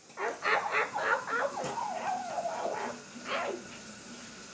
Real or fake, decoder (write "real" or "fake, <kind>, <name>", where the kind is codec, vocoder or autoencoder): real